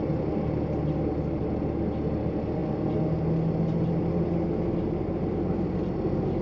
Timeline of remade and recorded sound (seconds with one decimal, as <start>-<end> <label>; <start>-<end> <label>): 0.0-6.4 recorded